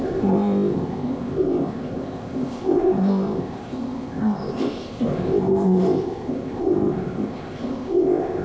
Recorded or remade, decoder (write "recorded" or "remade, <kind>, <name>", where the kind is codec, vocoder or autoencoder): remade, codec, ZipCodec